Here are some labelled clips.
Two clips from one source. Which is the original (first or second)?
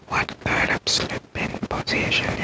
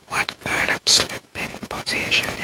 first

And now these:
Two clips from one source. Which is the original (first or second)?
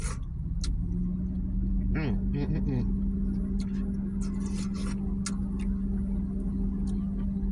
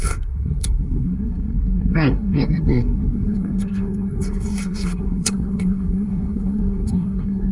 first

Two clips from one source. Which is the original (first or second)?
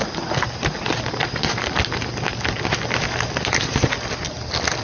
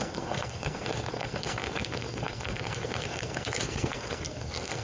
first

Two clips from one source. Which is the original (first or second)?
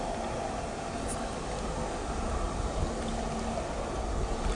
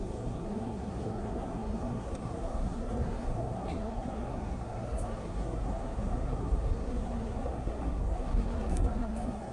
first